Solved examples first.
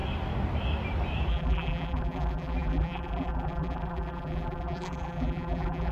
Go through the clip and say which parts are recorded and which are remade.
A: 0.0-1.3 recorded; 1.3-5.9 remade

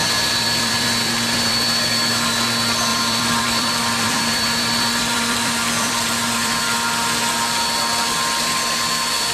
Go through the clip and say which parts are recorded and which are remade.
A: 0.0-1.9 remade; 1.9-2.9 recorded; 2.9-6.6 remade; 6.6-9.3 recorded

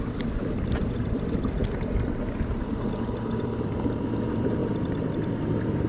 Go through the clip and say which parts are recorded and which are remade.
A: 0.0-1.6 remade; 1.6-3.4 recorded; 3.4-5.9 remade

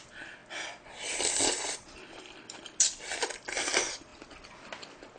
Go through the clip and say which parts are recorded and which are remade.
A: 0.0-5.2 recorded

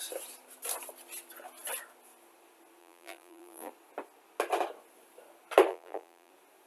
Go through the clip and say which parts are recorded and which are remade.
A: 0.0-2.8 recorded; 2.8-3.7 remade; 3.7-5.7 recorded; 5.7-6.3 remade; 6.3-6.7 recorded

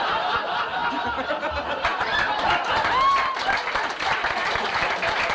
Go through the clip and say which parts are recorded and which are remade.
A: 0.0-0.8 recorded; 0.8-1.3 remade; 1.3-5.3 recorded